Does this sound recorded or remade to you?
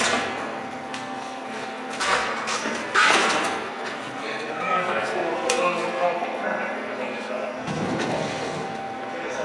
remade